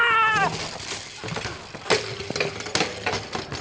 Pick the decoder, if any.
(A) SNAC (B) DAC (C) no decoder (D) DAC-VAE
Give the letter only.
C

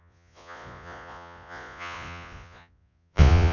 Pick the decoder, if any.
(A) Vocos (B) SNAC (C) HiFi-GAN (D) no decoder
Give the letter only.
A